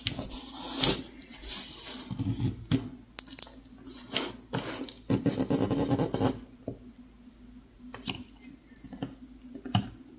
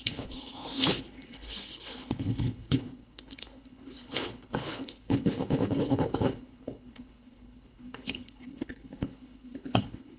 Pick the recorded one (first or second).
first